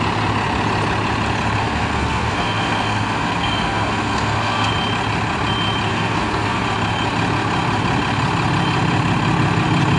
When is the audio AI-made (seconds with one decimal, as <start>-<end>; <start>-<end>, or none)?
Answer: 1.6-4.7; 5.9-6.6